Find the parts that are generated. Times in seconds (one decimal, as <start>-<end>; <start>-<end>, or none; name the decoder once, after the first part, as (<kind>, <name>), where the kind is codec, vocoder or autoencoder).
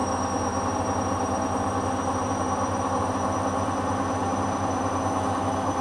none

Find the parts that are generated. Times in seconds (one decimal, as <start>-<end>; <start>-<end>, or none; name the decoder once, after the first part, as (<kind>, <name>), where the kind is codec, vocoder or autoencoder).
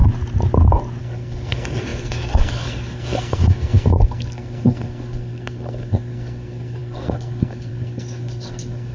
1.0-8.9 (codec, SNAC)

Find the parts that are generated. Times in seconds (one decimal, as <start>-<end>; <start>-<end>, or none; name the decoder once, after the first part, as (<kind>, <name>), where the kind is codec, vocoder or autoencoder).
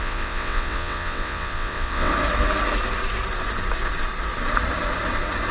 0.0-2.1 (vocoder, WaveNeXt)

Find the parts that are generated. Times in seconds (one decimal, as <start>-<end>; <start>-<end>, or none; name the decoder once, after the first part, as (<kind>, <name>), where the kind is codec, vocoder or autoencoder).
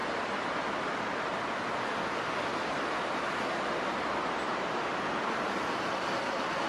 0.0-1.1 (vocoder, BigVGAN v2); 2.5-3.3; 4.5-5.2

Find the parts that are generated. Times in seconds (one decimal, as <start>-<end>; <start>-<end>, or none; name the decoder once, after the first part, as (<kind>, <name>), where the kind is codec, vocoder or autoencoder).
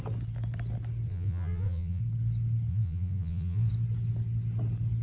1.1-2.0 (vocoder, Vocos); 2.7-3.7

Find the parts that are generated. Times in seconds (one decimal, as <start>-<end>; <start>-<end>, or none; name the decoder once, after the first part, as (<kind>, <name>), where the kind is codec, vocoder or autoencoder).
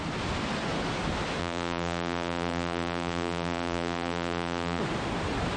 1.4-4.8 (vocoder, BigVGAN v2)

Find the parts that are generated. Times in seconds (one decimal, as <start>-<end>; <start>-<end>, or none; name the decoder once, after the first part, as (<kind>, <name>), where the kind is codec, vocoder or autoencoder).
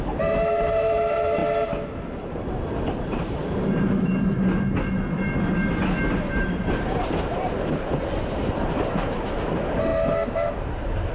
0.0-1.4 (vocoder, BigVGAN v2); 2.3-4.3; 6.2-11.1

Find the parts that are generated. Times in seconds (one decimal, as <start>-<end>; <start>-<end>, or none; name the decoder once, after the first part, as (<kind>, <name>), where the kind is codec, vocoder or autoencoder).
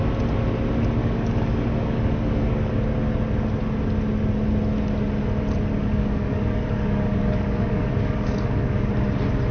1.0-2.7 (codec, DAC); 5.8-8.9